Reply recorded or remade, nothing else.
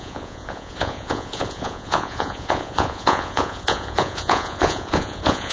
remade